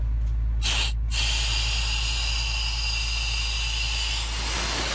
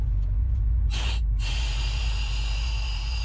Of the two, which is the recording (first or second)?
first